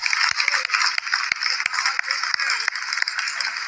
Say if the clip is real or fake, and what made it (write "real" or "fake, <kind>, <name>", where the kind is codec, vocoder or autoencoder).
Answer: real